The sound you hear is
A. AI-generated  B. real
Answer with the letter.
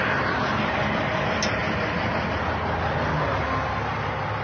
B